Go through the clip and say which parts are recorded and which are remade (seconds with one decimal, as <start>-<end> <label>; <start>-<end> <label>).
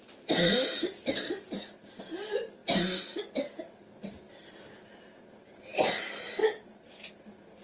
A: 0.0-6.4 recorded; 6.4-7.1 remade; 7.1-7.6 recorded